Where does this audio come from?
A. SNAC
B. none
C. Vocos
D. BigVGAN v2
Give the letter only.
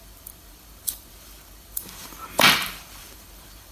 D